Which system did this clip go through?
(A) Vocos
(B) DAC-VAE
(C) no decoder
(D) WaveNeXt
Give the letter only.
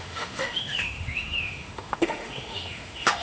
B